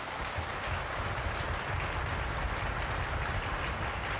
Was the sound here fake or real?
real